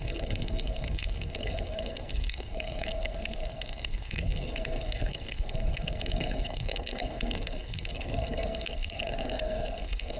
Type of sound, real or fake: fake